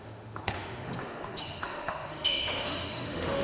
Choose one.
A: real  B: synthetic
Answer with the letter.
B